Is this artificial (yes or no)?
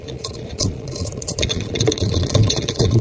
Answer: yes